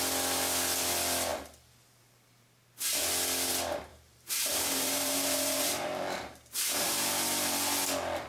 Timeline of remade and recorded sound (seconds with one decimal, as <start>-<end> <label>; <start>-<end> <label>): 0.0-3.9 recorded; 3.9-7.1 remade; 7.1-8.3 recorded